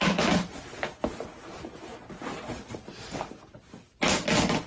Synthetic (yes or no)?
no